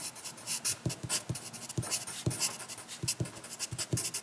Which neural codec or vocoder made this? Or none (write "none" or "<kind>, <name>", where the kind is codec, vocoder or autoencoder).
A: none